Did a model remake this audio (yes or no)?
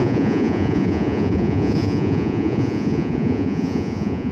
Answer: yes